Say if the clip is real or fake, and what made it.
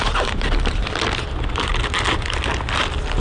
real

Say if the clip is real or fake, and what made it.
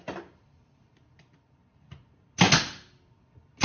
real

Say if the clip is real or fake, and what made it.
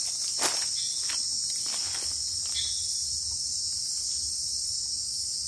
real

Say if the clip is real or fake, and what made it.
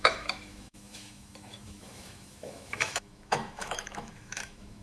fake, autoencoder, DAC-VAE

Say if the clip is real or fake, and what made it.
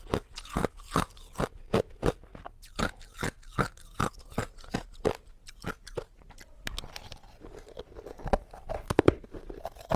real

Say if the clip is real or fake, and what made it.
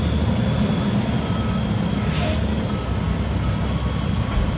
real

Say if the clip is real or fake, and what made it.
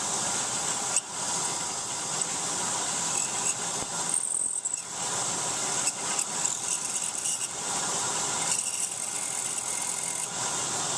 real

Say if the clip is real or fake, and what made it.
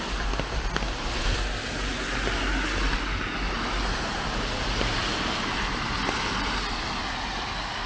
real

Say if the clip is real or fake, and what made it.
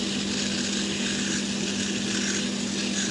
real